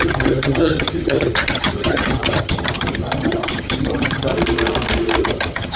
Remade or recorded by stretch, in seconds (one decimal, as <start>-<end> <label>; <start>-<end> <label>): 0.0-4.3 remade; 4.3-5.2 recorded; 5.2-5.8 remade

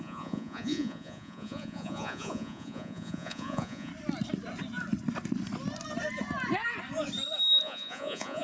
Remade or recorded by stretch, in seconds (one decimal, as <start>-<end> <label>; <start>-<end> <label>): 0.0-3.9 remade; 3.9-7.6 recorded; 7.6-8.4 remade

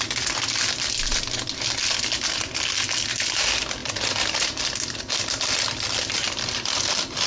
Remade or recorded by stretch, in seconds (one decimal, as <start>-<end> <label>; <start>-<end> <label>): 0.0-3.8 recorded; 3.8-7.3 remade

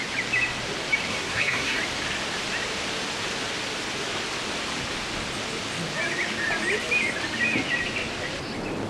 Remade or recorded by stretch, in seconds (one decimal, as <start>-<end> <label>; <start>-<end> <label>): 0.0-1.1 recorded; 1.1-1.8 remade; 1.8-8.9 recorded

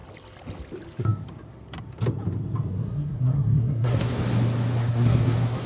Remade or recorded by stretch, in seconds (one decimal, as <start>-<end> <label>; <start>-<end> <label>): 0.0-2.7 recorded; 2.7-4.1 remade; 4.1-4.8 recorded; 4.8-5.7 remade

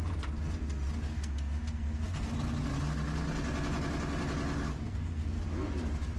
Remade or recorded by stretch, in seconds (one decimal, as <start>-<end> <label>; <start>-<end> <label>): 0.0-1.1 recorded; 1.1-2.3 remade; 2.3-4.8 recorded; 4.8-5.4 remade; 5.4-6.2 recorded